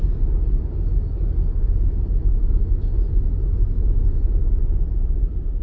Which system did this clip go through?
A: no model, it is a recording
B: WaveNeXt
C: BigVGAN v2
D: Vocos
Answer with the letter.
A